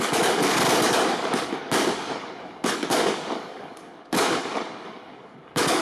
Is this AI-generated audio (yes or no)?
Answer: yes